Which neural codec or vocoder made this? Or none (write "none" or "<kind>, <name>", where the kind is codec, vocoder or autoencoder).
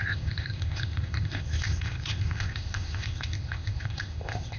codec, ZipCodec